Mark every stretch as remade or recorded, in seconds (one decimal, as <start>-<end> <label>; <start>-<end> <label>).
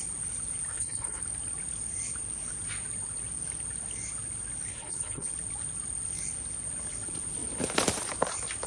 0.0-0.7 recorded; 0.7-1.2 remade; 1.2-4.7 recorded; 4.7-5.3 remade; 5.3-8.7 recorded